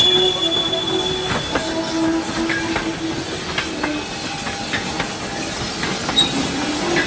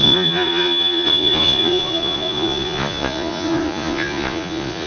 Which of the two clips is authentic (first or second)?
first